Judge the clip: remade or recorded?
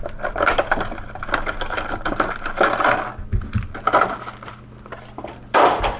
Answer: recorded